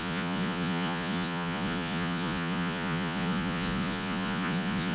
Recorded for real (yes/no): no